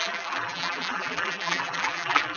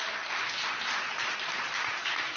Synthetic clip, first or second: first